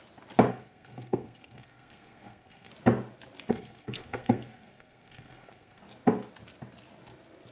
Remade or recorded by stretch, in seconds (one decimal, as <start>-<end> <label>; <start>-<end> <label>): 0.0-0.5 recorded; 0.5-2.7 remade; 2.7-3.5 recorded; 3.5-5.8 remade; 5.8-7.5 recorded